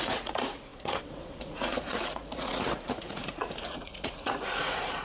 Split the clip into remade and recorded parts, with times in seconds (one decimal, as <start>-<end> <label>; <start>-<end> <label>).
0.0-5.0 remade